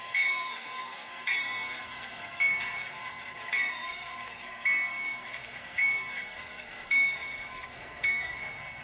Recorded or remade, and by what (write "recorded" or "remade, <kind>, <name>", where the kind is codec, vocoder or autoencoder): remade, codec, SNAC